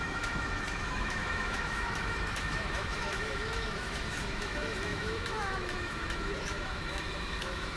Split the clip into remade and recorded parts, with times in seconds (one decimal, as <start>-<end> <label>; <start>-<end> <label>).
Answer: 0.0-7.8 remade